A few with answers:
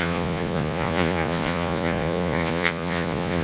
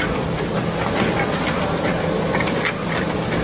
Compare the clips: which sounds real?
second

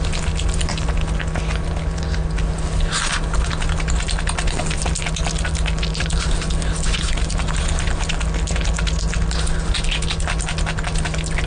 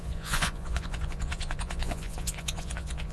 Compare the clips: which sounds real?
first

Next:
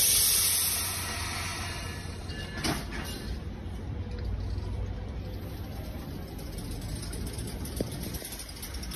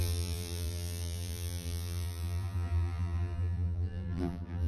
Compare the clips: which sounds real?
first